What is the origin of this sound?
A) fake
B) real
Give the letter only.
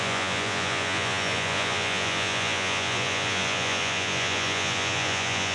A